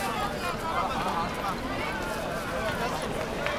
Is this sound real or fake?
real